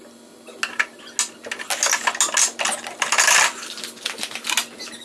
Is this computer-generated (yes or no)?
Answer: no